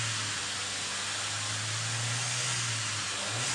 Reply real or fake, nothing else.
real